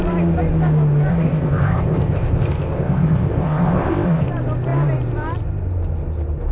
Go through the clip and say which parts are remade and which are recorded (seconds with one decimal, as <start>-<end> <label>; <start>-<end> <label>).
0.0-1.1 recorded; 1.1-4.3 remade; 4.3-6.5 recorded